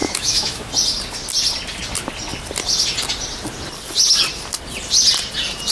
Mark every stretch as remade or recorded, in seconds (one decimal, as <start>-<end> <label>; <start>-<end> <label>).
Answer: 0.0-0.7 remade; 0.7-5.7 recorded